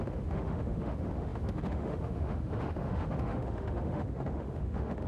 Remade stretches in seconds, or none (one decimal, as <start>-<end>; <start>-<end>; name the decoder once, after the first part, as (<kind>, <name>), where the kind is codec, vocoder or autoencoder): 0.0-5.1 (autoencoder, DAC-VAE)